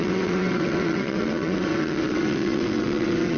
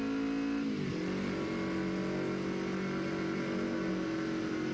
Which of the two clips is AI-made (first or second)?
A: first